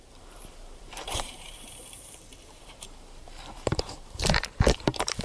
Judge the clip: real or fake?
fake